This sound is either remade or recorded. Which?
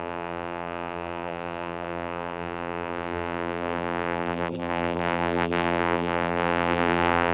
remade